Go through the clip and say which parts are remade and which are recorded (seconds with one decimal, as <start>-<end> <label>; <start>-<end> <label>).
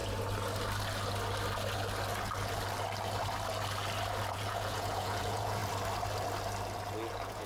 0.0-4.3 recorded; 4.3-5.6 remade; 5.6-7.1 recorded; 7.1-7.5 remade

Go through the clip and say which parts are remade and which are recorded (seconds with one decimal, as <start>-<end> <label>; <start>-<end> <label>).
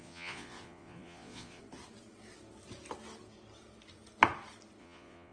0.0-1.6 remade; 1.6-4.8 recorded; 4.8-5.3 remade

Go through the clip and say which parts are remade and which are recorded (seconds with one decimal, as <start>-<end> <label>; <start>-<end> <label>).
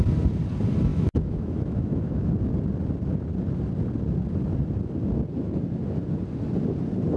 0.0-0.9 recorded; 0.9-2.3 remade; 2.3-7.2 recorded